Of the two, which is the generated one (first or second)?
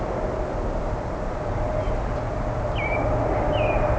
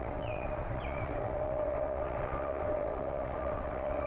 second